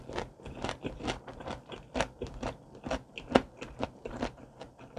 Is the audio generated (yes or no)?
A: no